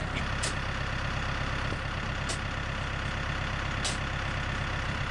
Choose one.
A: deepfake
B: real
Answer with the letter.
B